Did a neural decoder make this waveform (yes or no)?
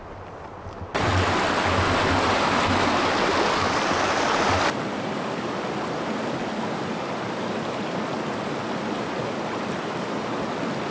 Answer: no